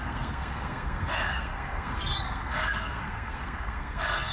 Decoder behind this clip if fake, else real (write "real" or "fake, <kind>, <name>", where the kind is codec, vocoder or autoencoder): fake, codec, SNAC